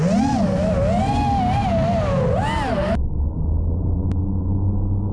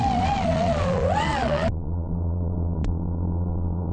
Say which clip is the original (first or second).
first